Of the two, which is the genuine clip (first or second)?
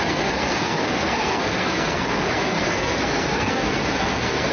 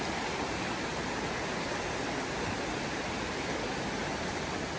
second